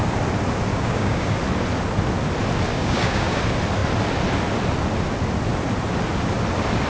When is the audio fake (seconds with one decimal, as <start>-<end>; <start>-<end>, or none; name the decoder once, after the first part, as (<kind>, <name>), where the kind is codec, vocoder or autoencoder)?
0.7-1.4 (codec, DAC); 2.7-3.4